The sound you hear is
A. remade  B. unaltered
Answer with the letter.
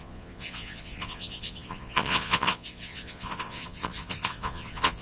A